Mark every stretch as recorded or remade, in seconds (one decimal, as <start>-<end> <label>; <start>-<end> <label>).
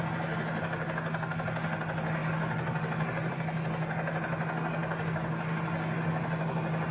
0.0-6.9 recorded